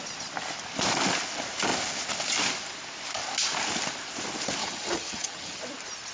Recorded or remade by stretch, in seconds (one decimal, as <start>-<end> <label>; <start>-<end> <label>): 0.0-4.6 recorded; 4.6-5.6 remade; 5.6-6.1 recorded